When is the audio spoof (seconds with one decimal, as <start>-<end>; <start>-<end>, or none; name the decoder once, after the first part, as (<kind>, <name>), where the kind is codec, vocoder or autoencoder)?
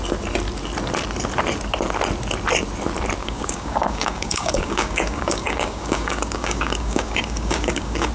3.2-8.1 (codec, DAC)